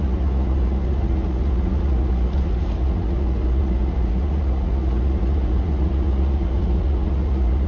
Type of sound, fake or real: fake